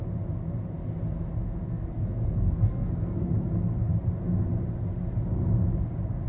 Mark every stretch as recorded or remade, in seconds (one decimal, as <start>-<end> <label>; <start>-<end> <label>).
0.0-1.7 recorded; 1.7-3.3 remade; 3.3-6.3 recorded